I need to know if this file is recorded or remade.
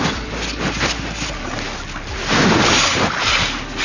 recorded